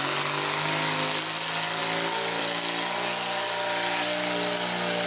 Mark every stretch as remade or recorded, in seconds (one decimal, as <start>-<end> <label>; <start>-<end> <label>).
0.0-5.1 recorded